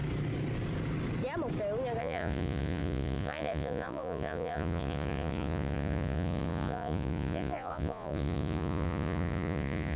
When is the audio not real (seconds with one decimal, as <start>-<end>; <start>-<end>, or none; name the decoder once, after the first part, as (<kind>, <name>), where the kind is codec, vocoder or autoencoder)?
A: 2.0-10.0 (vocoder, Vocos)